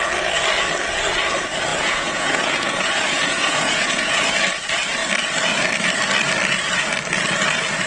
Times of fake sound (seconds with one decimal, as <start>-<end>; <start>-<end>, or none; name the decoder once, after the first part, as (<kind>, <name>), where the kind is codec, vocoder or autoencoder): 1.7-4.2 (vocoder, Vocos)